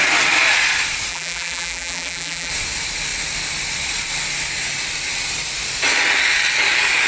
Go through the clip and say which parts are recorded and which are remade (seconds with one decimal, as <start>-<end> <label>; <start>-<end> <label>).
0.0-1.1 recorded; 1.1-2.5 remade; 2.5-7.1 recorded